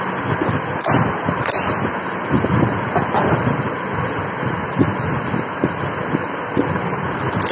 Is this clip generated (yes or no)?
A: no